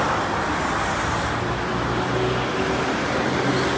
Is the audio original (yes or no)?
yes